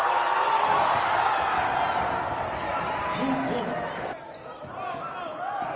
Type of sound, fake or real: real